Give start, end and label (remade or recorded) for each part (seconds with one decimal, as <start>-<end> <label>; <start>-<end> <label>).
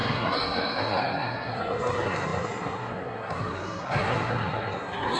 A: 0.0-5.2 remade